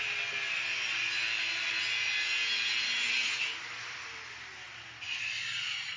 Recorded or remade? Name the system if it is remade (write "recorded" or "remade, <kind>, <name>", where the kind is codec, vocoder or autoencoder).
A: recorded